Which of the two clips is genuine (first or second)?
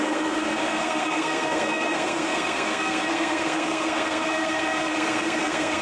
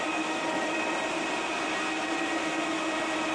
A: second